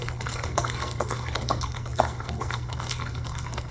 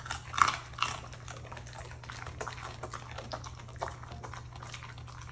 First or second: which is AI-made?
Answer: first